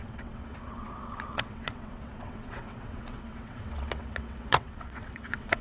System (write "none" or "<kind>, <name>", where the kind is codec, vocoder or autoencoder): vocoder, WaveNeXt